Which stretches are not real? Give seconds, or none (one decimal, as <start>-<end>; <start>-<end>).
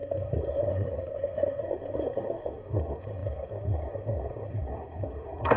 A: 0.0-5.6